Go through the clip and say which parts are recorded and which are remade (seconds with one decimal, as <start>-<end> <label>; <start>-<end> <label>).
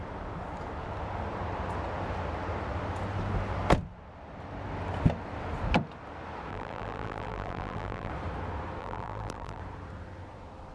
0.0-6.5 recorded; 6.5-8.1 remade; 8.1-8.8 recorded; 8.8-9.6 remade; 9.6-10.7 recorded